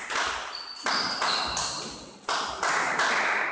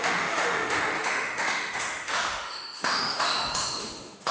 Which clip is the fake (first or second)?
second